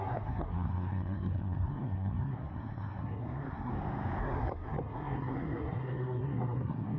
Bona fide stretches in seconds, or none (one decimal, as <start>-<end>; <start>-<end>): 3.7-4.2